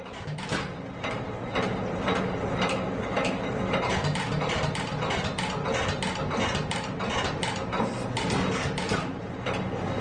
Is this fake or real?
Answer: real